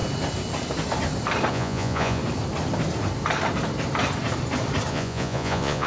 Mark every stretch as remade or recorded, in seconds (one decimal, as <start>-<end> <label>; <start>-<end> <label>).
0.0-1.5 recorded; 1.5-2.2 remade; 2.2-4.9 recorded; 4.9-5.9 remade